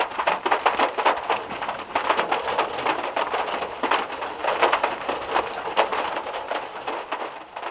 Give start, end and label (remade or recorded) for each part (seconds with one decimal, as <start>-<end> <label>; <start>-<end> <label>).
0.0-4.4 recorded; 4.4-5.4 remade; 5.4-5.9 recorded; 5.9-6.9 remade; 6.9-7.7 recorded